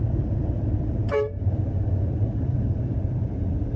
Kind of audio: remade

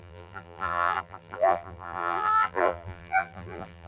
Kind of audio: remade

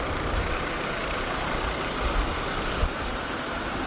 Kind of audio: remade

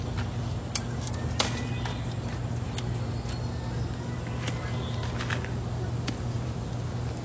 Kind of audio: recorded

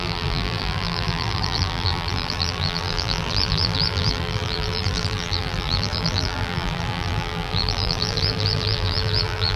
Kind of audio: remade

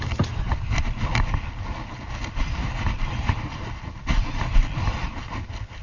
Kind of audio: recorded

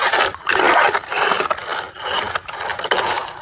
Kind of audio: recorded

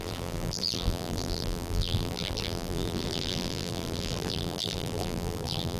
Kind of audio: remade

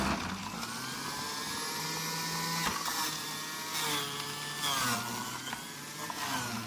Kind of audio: recorded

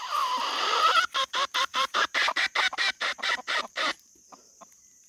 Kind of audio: remade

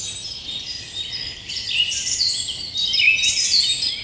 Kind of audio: remade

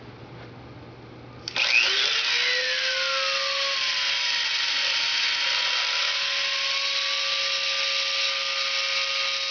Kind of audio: recorded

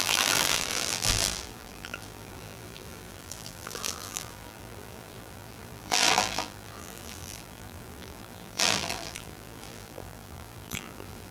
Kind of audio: remade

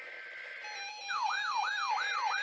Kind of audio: recorded